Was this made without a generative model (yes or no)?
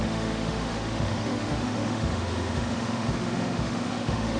no